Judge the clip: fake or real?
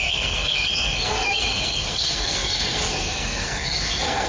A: fake